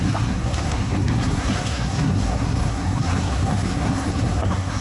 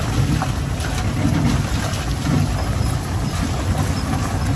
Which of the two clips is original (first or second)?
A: second